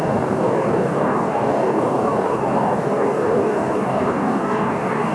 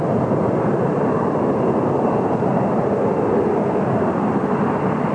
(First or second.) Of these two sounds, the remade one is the first